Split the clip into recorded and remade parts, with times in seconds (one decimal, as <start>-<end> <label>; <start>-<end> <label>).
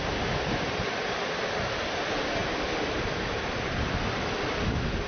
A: 0.0-5.1 recorded